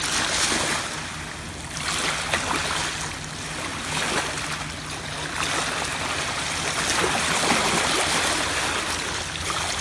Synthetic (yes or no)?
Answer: no